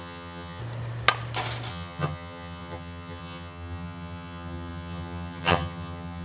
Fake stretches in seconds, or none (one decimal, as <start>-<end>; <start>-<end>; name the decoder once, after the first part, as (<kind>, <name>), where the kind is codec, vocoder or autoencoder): 0.0-0.6 (vocoder, HiFi-GAN); 1.7-6.2

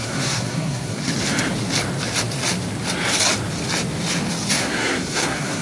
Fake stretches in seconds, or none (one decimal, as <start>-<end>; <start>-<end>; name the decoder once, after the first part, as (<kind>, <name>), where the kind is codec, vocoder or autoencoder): 0.0-1.1 (codec, SNAC); 4.5-5.6

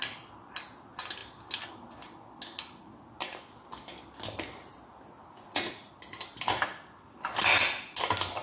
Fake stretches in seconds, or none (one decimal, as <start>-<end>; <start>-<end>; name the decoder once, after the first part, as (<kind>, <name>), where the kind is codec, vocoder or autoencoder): 5.2-5.9 (vocoder, Vocos)

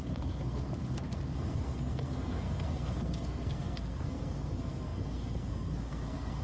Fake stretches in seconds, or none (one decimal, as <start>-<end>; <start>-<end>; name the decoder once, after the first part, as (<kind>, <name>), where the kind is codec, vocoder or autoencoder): 0.0-6.4 (codec, SNAC)

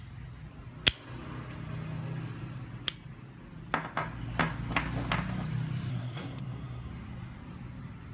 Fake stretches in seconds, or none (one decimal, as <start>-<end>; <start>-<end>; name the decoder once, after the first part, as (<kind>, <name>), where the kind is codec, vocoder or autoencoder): 5.9-6.9 (codec, SNAC)